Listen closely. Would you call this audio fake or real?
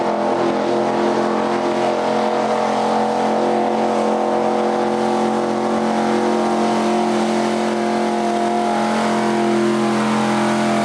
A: real